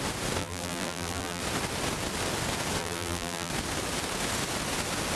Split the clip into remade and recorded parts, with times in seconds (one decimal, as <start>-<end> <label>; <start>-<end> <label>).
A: 0.0-0.4 recorded; 0.4-1.4 remade; 1.4-2.8 recorded; 2.8-3.5 remade; 3.5-5.2 recorded

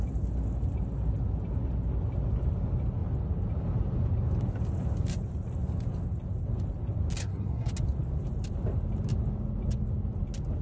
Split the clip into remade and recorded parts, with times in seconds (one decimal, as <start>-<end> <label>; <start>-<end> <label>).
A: 0.0-7.2 recorded; 7.2-7.7 remade; 7.7-10.6 recorded

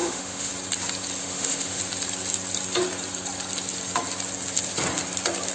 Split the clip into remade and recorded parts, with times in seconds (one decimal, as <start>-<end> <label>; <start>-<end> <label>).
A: 0.0-0.5 remade; 0.5-1.2 recorded; 1.2-1.8 remade; 1.8-5.5 recorded

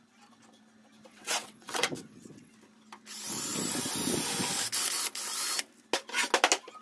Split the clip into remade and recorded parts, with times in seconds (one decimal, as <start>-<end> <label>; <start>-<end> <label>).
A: 0.0-1.1 recorded; 1.1-2.5 remade; 2.5-6.8 recorded

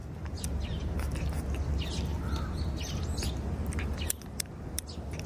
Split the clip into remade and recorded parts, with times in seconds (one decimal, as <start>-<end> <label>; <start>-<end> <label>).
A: 0.0-5.3 recorded